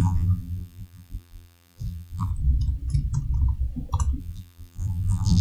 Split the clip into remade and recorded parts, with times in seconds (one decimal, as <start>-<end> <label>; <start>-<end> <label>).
0.0-2.3 remade; 2.3-4.2 recorded; 4.2-5.4 remade